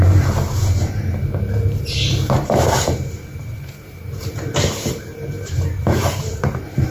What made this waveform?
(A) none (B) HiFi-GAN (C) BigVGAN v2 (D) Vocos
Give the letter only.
C